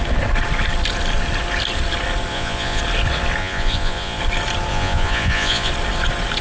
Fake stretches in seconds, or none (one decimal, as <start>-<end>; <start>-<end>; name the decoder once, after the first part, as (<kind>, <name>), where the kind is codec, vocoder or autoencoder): 2.3-2.8 (vocoder, Vocos); 3.4-4.2; 4.7-5.7